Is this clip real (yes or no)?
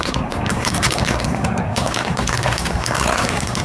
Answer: no